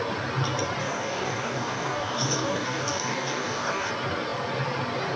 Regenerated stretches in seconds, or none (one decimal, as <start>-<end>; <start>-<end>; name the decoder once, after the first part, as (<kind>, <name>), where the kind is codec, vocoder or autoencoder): 0.8-3.9 (codec, DAC)